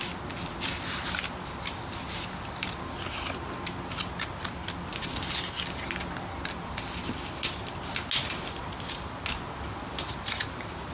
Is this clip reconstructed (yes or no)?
no